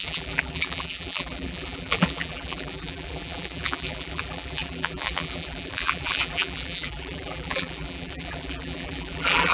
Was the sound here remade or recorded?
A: remade